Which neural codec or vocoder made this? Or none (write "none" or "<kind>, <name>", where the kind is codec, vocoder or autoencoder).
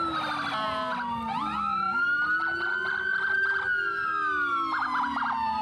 none